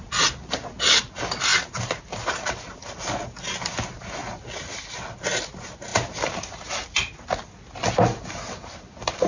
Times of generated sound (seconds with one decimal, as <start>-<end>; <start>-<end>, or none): none